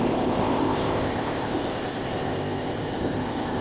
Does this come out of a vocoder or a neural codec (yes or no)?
yes